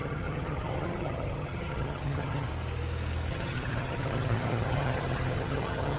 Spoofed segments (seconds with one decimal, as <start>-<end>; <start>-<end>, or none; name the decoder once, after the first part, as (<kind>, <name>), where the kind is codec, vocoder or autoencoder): 0.0-2.5 (vocoder, HiFi-GAN); 3.3-6.0